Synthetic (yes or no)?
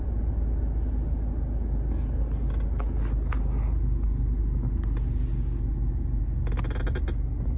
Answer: no